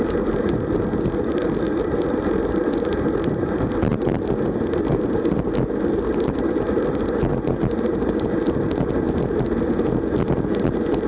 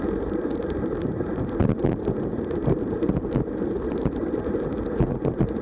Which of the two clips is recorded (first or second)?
first